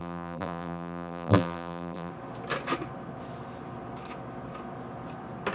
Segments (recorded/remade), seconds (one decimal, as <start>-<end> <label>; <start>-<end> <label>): 0.0-2.1 remade; 2.1-5.5 recorded